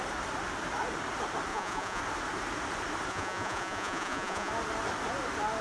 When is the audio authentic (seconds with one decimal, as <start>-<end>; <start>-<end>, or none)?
0.0-1.5; 2.0-3.1; 4.5-5.6